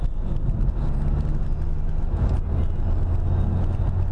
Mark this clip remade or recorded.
recorded